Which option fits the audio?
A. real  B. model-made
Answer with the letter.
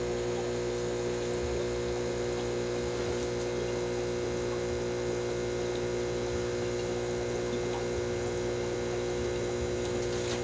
A